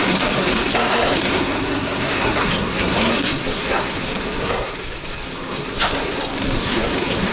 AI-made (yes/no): yes